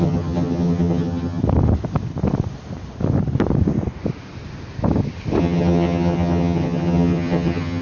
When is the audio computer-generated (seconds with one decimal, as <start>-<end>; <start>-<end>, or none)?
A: 0.0-1.4; 5.4-7.8